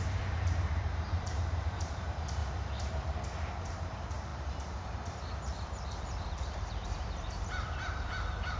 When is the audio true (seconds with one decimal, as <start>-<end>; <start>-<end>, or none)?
2.4-3.4